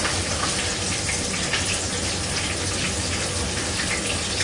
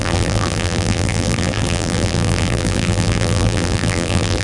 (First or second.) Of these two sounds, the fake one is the second